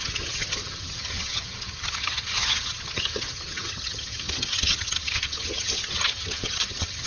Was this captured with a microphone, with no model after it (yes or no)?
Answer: no